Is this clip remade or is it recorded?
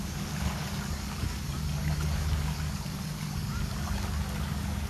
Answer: remade